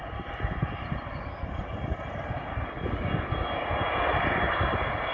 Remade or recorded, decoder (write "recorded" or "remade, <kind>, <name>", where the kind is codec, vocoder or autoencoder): recorded